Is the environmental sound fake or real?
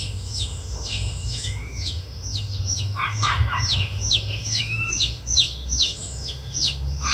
fake